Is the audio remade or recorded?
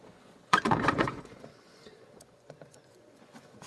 remade